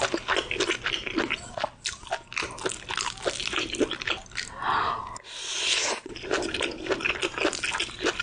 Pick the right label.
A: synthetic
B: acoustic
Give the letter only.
B